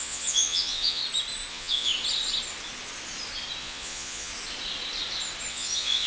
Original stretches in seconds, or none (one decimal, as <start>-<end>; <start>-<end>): 1.0-1.5; 1.9-3.6; 4.3-5.5